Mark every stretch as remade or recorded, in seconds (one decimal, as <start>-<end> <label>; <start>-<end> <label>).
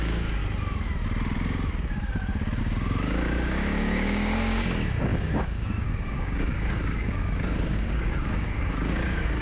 0.0-0.4 remade; 0.4-2.6 recorded; 2.6-9.4 remade